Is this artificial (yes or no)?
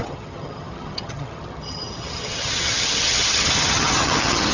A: yes